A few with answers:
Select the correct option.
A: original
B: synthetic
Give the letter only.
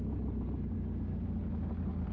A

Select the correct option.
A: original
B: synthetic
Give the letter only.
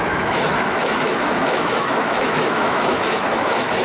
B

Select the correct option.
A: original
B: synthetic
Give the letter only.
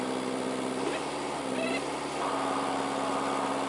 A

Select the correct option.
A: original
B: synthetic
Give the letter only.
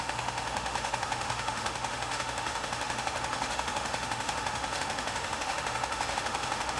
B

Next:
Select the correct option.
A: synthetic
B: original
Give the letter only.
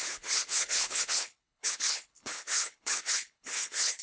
A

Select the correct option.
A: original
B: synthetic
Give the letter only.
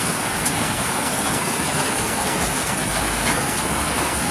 B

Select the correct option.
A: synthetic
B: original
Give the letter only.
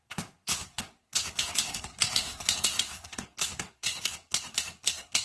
A